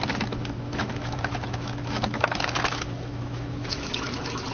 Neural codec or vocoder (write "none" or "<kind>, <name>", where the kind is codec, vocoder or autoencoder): autoencoder, DAC-VAE